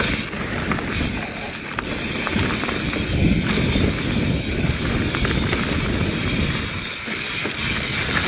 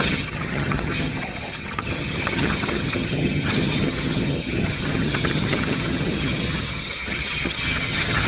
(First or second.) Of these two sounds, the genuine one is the first